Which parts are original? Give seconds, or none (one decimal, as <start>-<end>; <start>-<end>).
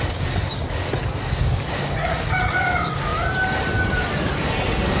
0.0-5.0